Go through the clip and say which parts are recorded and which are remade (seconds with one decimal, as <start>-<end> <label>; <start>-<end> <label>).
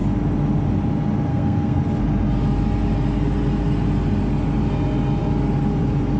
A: 0.0-1.3 recorded; 1.3-1.8 remade; 1.8-6.2 recorded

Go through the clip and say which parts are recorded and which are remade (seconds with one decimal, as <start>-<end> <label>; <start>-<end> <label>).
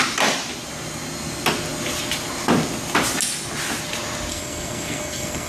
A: 0.0-4.3 recorded; 4.3-5.5 remade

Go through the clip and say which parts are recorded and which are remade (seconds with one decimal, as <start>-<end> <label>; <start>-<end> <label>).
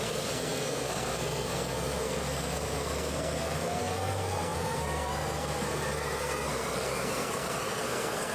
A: 0.0-8.3 remade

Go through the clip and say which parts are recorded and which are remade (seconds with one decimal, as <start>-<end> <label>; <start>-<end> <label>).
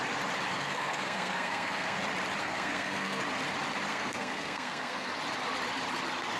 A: 0.0-0.5 recorded; 0.5-2.0 remade; 2.0-2.4 recorded; 2.4-3.2 remade; 3.2-3.9 recorded; 3.9-5.1 remade; 5.1-6.4 recorded